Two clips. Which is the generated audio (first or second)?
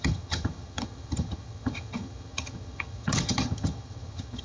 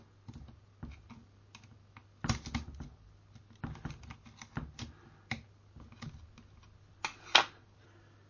first